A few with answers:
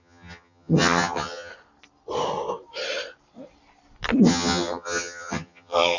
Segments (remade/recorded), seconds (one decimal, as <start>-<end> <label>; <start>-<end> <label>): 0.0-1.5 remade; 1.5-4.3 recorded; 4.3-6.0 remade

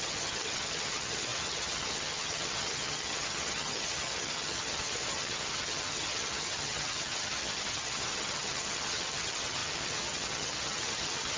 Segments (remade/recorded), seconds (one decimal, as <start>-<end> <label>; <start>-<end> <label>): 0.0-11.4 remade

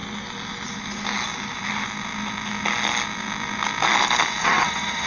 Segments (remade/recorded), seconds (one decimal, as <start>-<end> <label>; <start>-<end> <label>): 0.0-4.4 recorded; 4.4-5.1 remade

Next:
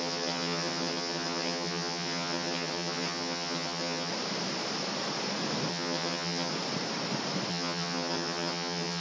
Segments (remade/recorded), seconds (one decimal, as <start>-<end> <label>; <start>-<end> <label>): 0.0-4.1 remade; 4.1-5.7 recorded; 5.7-6.5 remade; 6.5-7.5 recorded; 7.5-9.0 remade

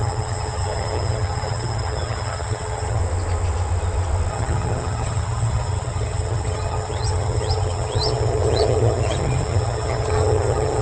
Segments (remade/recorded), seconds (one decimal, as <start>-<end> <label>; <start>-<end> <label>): 0.0-3.0 remade; 3.0-4.3 recorded; 4.3-10.8 remade

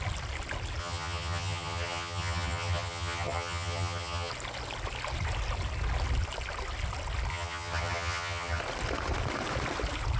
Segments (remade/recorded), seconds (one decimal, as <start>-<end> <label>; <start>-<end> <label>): 0.0-0.8 recorded; 0.8-4.3 remade; 4.3-7.3 recorded; 7.3-8.6 remade; 8.6-10.2 recorded

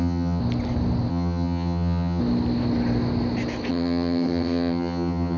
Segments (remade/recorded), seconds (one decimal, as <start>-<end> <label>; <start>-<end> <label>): 0.0-0.4 remade; 0.4-1.1 recorded; 1.1-2.2 remade; 2.2-3.7 recorded; 3.7-5.4 remade

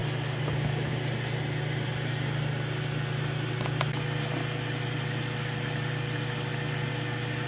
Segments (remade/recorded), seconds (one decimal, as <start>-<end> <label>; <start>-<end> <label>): 0.0-7.5 recorded